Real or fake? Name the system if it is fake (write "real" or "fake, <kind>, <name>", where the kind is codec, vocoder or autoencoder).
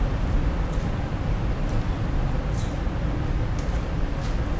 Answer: real